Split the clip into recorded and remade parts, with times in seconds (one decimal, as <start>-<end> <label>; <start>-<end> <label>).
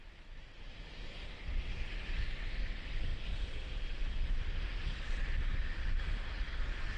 0.0-7.0 recorded